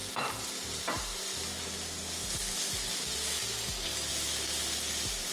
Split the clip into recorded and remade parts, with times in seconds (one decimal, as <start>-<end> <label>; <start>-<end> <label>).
0.0-5.3 recorded